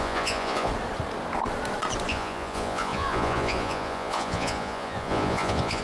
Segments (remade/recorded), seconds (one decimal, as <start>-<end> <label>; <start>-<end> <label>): 0.0-0.7 remade; 0.7-2.1 recorded; 2.1-5.8 remade